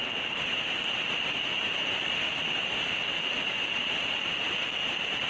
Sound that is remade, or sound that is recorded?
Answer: remade